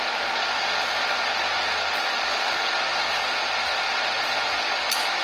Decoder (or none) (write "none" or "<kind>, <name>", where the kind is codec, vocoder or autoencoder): none